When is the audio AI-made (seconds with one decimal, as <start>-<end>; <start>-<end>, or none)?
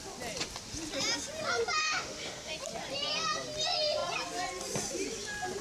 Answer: 1.8-2.5